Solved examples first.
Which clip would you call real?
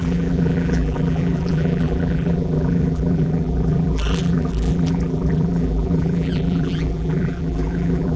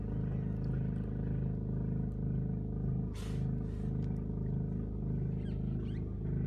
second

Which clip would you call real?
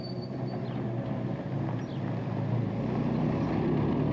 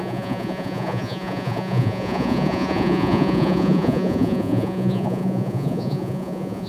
first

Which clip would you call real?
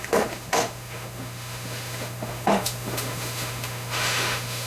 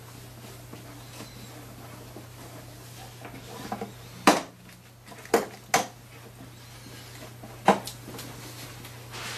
second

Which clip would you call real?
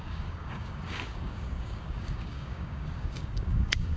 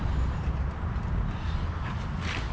second